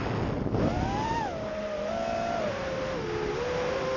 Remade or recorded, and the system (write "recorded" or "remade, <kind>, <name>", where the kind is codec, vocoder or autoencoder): recorded